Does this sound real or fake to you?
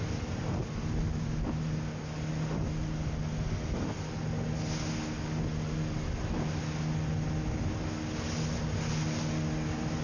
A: real